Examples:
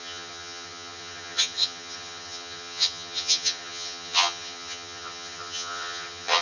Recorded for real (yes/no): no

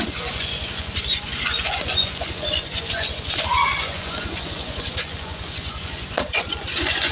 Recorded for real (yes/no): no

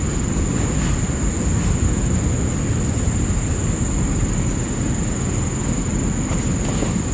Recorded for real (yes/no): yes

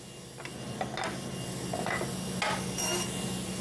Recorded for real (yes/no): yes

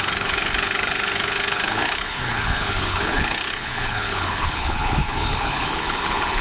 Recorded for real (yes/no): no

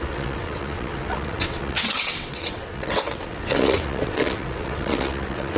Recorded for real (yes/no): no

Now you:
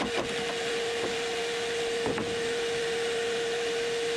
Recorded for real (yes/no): yes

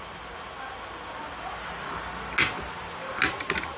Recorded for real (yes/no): yes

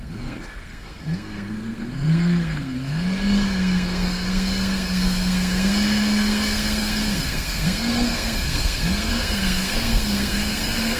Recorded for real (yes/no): no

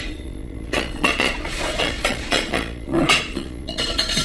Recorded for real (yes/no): no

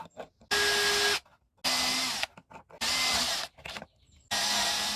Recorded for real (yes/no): yes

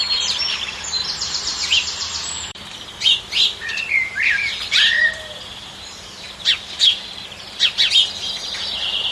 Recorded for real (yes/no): no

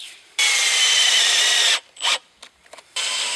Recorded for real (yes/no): no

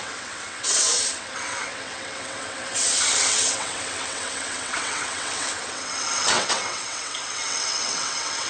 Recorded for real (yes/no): no